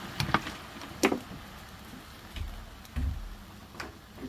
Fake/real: real